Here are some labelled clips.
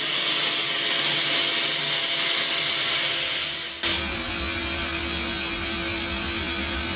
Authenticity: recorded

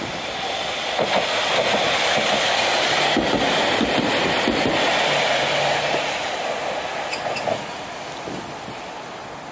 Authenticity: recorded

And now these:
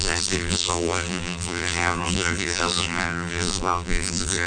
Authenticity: remade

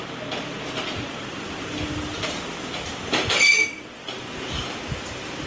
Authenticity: recorded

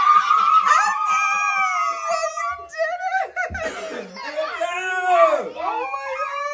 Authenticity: recorded